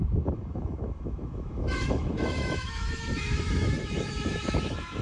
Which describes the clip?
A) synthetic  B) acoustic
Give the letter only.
A